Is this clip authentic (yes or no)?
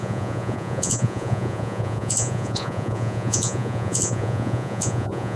no